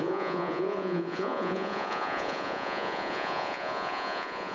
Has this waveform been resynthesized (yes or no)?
yes